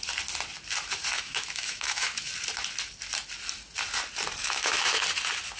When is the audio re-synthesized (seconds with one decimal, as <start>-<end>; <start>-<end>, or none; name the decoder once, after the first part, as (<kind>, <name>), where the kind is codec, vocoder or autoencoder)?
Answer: 1.1-2.3 (autoencoder, DAC-VAE); 4.4-5.0